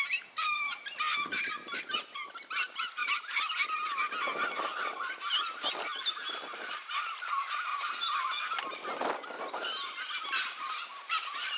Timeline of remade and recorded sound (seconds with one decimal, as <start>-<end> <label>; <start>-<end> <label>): 0.0-3.0 recorded; 3.0-3.5 remade; 3.5-5.6 recorded; 5.6-7.2 remade; 7.2-11.6 recorded